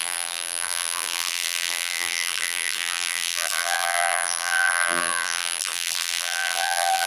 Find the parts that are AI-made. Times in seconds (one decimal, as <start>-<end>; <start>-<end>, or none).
0.0-7.1